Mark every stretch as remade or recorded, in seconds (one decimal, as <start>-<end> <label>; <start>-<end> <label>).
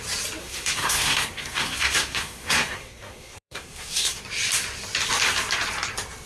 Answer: 0.0-0.4 recorded; 0.4-4.2 remade; 4.2-6.3 recorded